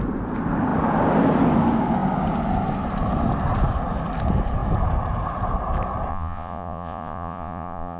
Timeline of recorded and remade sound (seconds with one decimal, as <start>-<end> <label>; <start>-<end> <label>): 0.0-6.1 recorded; 6.1-8.0 remade